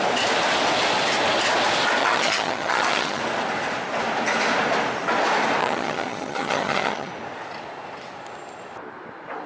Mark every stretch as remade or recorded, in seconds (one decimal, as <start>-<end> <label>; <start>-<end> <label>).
0.0-2.0 recorded; 2.0-3.2 remade; 3.2-5.6 recorded; 5.6-7.1 remade; 7.1-9.5 recorded